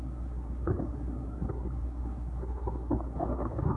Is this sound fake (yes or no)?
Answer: yes